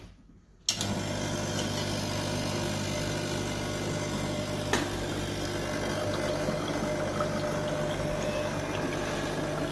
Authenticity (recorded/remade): recorded